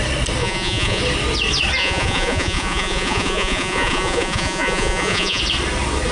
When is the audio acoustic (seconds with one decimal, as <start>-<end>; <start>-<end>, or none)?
0.0-0.4; 1.0-1.8; 5.4-6.1